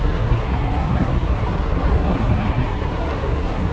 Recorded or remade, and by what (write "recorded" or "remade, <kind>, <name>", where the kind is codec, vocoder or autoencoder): remade, codec, SNAC